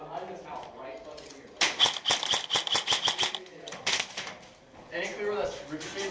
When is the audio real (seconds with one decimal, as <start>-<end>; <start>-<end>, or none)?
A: 0.0-6.1